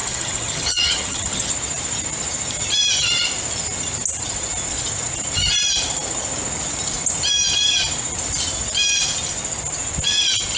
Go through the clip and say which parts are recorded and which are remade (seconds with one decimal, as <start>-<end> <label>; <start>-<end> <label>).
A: 0.0-1.5 remade; 1.5-10.6 recorded